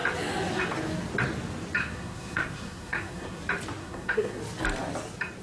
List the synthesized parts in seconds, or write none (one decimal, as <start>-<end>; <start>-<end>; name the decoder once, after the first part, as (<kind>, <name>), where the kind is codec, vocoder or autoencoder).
1.8-3.4 (codec, SNAC); 3.8-4.4